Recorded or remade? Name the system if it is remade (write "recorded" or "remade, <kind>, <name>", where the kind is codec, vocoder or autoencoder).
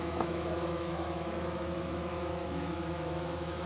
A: remade, autoencoder, DAC-VAE